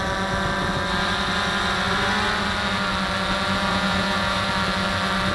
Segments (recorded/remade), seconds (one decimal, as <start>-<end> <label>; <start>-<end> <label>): 0.0-3.7 recorded; 3.7-4.5 remade; 4.5-5.3 recorded